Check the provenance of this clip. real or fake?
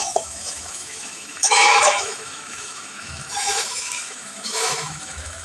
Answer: fake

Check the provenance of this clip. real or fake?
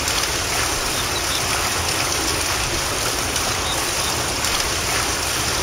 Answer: real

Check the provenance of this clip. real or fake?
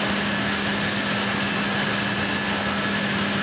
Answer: real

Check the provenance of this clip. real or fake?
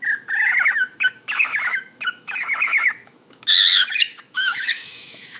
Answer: fake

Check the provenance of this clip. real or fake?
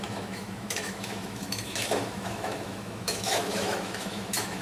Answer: fake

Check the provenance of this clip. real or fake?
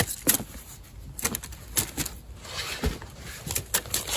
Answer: real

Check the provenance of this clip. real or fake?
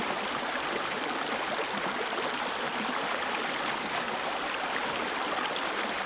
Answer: real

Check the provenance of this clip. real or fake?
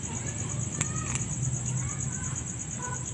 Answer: real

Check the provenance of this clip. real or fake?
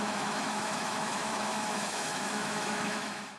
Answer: fake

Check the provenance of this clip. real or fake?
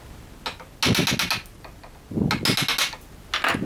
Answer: real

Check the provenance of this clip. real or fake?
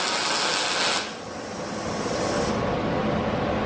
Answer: real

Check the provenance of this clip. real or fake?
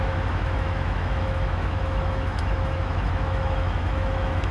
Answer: fake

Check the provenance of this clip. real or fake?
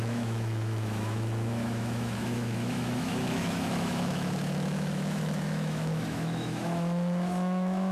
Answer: fake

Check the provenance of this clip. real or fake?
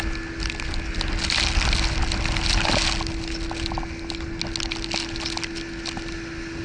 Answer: real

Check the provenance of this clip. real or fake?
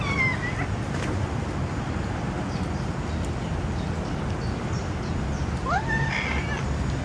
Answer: real